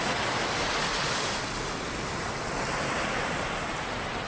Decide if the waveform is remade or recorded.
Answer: recorded